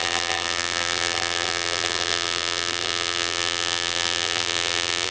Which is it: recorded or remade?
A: remade